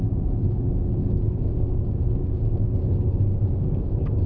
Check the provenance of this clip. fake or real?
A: fake